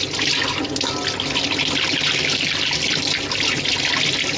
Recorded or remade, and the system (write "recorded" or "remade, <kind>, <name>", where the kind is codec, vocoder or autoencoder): recorded